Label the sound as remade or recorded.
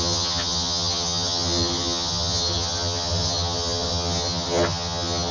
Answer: remade